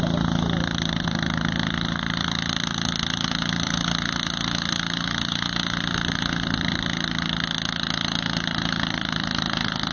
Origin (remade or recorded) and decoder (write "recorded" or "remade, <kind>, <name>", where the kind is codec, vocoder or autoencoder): recorded